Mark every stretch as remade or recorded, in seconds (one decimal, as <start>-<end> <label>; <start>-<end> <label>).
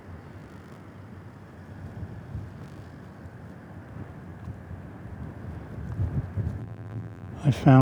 0.0-6.6 recorded; 6.6-7.3 remade; 7.3-7.8 recorded